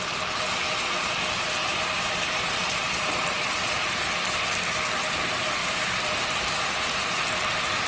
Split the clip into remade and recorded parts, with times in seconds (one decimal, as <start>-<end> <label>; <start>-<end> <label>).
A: 0.0-1.6 recorded; 1.6-3.9 remade; 3.9-5.6 recorded; 5.6-7.0 remade; 7.0-7.9 recorded